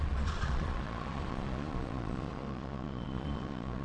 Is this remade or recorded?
remade